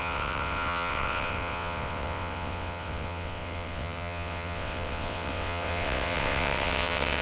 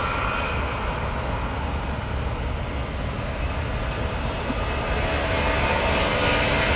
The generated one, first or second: first